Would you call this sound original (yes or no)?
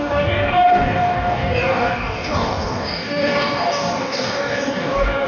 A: no